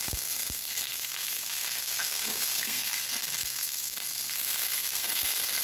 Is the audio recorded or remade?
remade